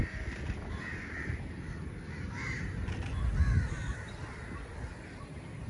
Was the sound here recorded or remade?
recorded